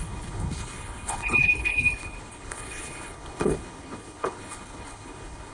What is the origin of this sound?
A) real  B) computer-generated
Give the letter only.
B